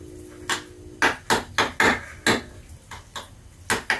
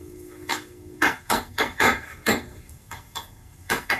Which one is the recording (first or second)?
first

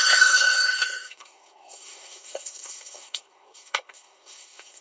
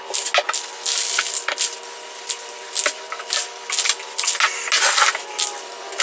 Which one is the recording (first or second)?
second